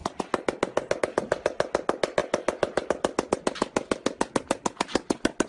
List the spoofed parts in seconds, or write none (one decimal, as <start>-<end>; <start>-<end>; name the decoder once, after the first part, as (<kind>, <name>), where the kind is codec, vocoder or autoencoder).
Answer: none